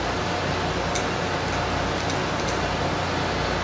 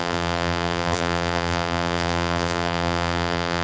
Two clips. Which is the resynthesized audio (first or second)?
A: second